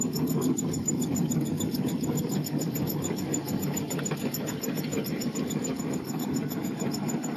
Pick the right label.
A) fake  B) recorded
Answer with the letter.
A